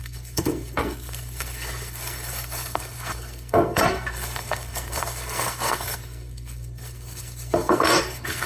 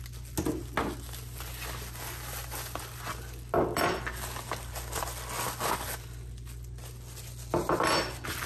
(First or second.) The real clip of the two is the second